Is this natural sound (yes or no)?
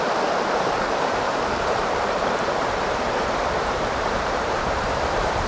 no